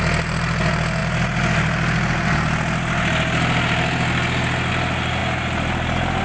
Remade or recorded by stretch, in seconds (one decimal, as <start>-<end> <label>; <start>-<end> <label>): 0.0-6.2 recorded